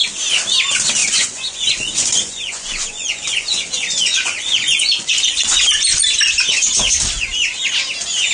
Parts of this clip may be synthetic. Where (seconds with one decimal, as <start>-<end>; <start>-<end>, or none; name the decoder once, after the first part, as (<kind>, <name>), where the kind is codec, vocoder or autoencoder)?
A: 1.0-5.6 (vocoder, Vocos)